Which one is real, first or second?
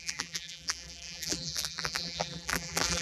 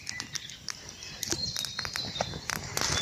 second